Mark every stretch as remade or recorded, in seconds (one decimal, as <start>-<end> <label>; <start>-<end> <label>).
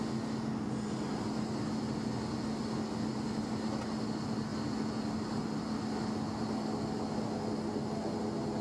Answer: 0.0-8.6 recorded